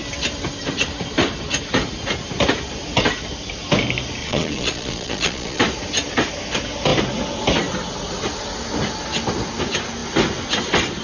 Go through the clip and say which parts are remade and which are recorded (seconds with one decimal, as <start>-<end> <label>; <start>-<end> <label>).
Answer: 0.0-4.2 recorded; 4.2-5.6 remade; 5.6-11.0 recorded